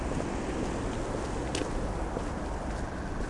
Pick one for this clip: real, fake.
real